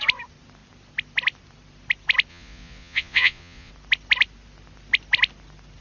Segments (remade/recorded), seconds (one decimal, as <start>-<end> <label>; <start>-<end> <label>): 0.0-2.3 recorded; 2.3-3.7 remade; 3.7-5.8 recorded